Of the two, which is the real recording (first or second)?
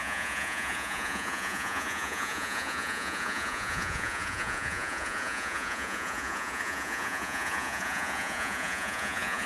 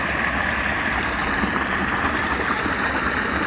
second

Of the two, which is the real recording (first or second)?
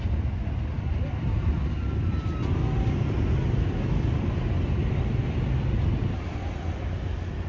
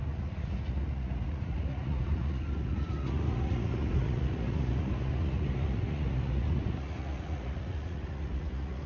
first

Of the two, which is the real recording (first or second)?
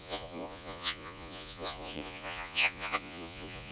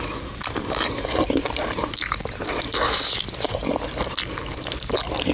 second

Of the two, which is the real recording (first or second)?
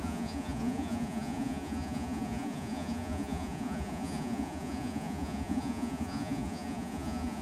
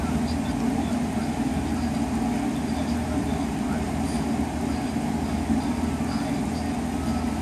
second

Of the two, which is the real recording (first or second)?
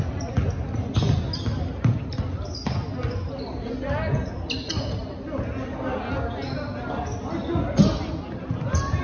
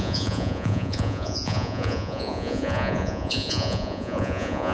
first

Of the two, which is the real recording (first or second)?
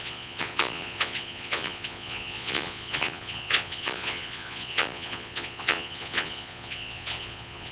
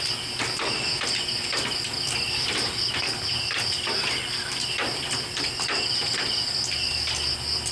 second